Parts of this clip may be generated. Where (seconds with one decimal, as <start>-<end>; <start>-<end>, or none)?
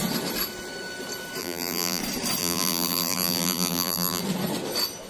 1.4-2.0; 2.4-4.2